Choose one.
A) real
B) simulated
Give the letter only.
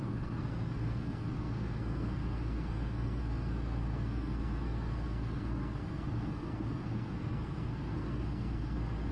B